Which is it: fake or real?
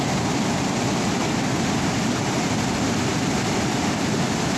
real